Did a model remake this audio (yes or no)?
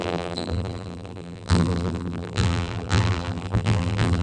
yes